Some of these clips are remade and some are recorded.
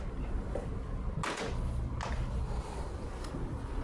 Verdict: recorded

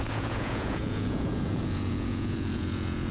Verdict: remade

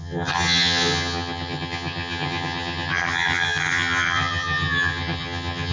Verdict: remade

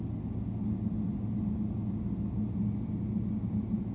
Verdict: recorded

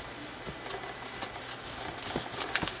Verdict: recorded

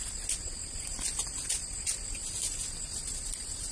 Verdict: recorded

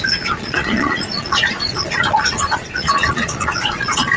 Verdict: remade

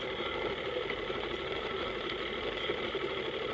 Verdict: recorded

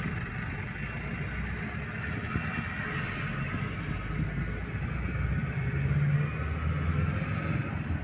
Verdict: recorded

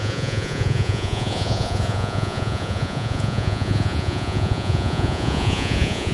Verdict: remade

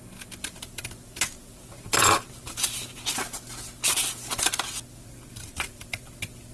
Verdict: recorded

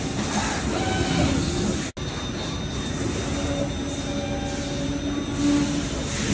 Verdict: recorded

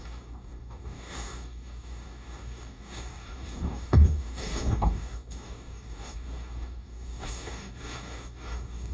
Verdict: remade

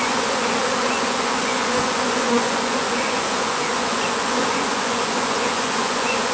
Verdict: remade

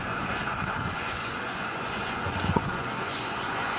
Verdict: remade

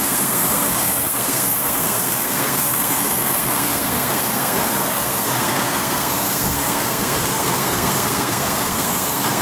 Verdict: remade